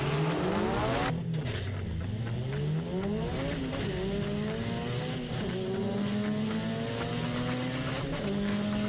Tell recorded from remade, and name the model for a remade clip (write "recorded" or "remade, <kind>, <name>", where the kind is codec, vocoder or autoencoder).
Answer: recorded